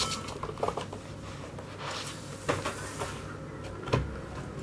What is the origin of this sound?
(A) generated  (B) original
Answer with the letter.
B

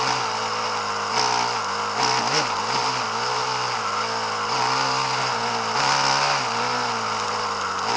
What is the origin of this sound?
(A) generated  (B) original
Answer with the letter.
B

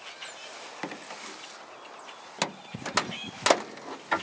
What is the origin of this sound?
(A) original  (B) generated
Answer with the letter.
A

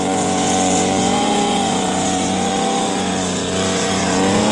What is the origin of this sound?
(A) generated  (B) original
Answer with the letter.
A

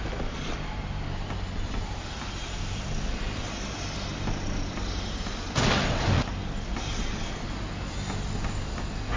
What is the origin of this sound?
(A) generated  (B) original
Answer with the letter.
B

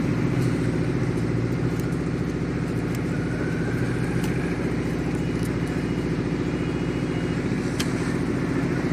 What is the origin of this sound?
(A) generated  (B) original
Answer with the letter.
B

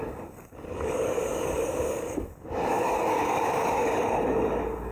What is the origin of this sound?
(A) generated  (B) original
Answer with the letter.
A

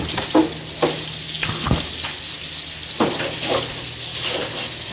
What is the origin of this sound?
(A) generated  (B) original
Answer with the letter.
B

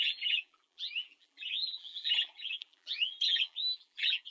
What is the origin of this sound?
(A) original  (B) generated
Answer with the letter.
B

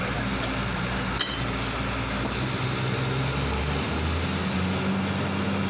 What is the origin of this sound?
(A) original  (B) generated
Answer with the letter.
A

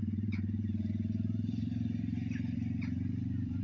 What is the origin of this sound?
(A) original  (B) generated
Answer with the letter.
B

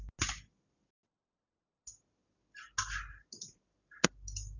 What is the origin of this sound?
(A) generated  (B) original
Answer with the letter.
B